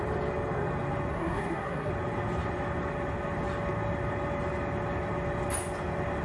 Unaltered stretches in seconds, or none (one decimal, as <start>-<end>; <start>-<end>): 0.0-1.1; 1.9-6.2